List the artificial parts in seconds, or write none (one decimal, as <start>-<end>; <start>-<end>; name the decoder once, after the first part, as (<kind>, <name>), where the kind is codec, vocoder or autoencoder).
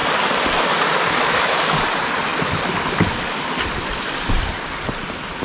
none